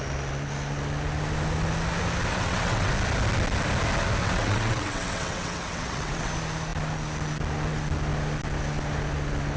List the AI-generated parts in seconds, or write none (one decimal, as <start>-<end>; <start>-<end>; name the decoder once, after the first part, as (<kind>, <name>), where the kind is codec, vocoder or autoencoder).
2.3-2.9 (vocoder, WaveNeXt); 4.2-6.3